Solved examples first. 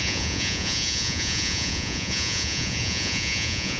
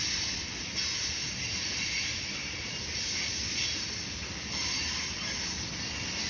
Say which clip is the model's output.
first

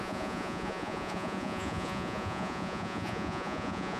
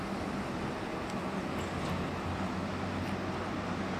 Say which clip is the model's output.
first